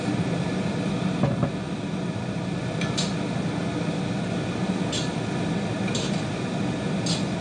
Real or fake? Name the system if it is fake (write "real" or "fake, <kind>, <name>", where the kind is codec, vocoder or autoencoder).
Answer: real